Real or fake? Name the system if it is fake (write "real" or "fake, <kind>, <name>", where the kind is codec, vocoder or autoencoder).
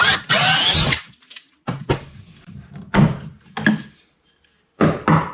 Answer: real